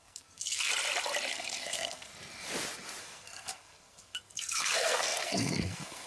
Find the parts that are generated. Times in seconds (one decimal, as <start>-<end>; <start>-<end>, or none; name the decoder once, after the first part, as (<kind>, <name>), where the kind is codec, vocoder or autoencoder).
0.0-0.7 (codec, SNAC); 1.3-2.1; 3.0-6.1